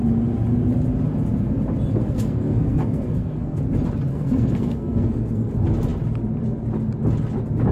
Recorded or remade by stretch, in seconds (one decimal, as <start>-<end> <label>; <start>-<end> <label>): 0.0-1.9 recorded; 1.9-3.6 remade; 3.6-4.1 recorded; 4.1-5.5 remade; 5.5-7.7 recorded